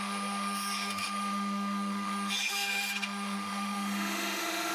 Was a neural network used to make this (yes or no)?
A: yes